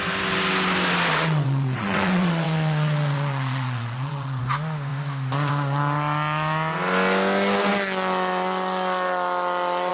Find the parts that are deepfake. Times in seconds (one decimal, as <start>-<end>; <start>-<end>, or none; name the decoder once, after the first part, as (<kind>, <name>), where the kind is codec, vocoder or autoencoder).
1.1-4.4 (vocoder, WaveNeXt)